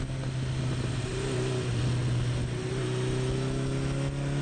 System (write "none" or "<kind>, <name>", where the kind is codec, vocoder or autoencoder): none